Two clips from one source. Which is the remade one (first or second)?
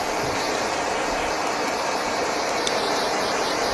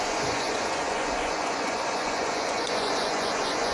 second